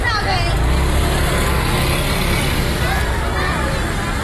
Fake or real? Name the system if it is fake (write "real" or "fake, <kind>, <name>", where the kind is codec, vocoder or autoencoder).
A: real